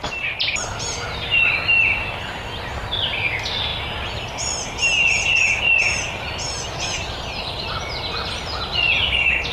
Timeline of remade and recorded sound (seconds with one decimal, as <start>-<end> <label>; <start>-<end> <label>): 0.0-9.5 recorded